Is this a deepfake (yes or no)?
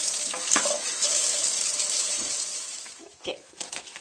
yes